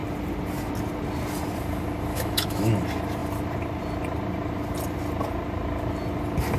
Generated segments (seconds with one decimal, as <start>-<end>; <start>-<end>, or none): 2.1-2.7